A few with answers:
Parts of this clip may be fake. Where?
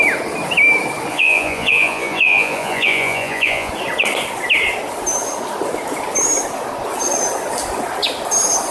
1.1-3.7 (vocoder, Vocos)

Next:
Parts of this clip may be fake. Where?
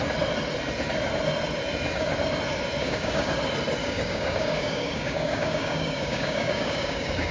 2.8-3.3 (codec, DAC); 3.8-7.3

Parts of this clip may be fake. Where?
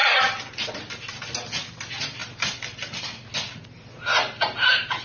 none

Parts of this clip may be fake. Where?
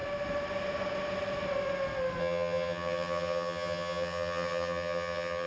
2.2-5.5 (vocoder, HiFi-GAN)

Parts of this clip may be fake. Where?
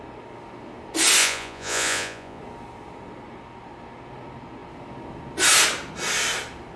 1.2-2.4 (vocoder, Vocos)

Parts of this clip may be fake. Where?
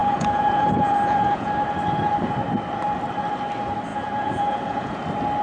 0.0-1.5 (vocoder, Vocos); 3.9-5.0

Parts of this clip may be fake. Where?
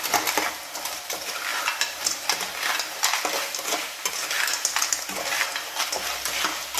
none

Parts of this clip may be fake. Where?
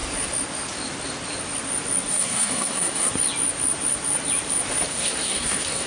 2.1-3.1 (codec, SNAC); 4.9-5.9